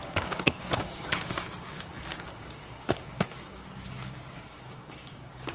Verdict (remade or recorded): remade